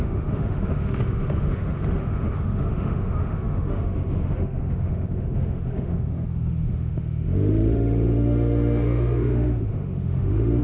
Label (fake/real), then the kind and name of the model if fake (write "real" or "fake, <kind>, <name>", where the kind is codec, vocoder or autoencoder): fake, autoencoder, DAC-VAE